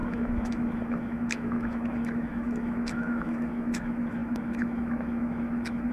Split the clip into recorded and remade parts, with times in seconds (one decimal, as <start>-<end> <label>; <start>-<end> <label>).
0.0-5.9 remade